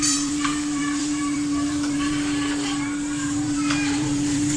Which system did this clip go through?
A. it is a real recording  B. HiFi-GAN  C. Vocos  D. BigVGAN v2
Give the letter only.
D